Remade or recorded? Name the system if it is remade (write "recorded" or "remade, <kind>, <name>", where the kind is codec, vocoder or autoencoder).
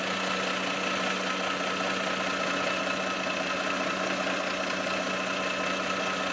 recorded